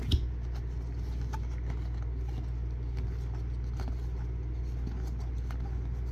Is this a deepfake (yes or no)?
no